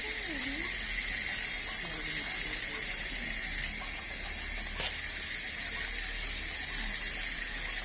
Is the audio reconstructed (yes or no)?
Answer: no